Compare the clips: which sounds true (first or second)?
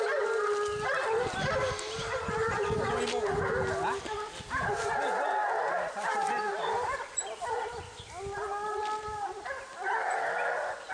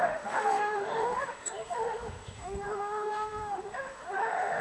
first